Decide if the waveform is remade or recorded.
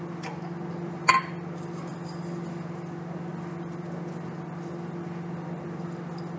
recorded